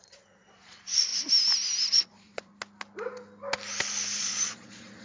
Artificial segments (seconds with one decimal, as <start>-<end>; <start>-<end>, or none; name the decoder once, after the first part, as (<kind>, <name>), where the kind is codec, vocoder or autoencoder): 0.0-1.1 (vocoder, Vocos); 1.9-2.5; 4.2-5.0